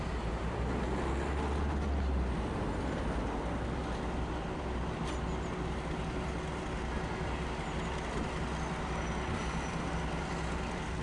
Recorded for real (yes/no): yes